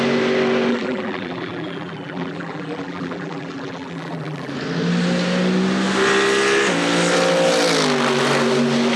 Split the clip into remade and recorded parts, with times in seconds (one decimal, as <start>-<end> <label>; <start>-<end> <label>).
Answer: 0.0-0.7 recorded; 0.7-4.5 remade; 4.5-9.0 recorded